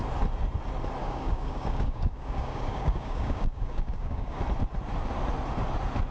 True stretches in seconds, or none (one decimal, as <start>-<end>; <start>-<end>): 0.0-1.0; 4.4-6.1